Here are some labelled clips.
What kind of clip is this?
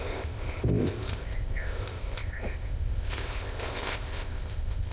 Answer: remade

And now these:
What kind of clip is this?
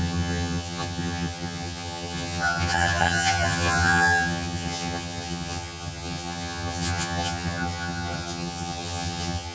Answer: remade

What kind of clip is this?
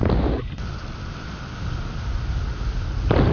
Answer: recorded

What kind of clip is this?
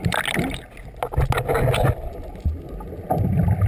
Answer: recorded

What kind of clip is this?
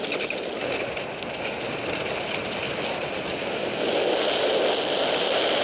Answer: recorded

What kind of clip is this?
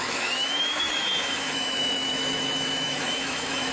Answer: remade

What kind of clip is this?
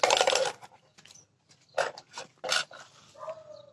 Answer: recorded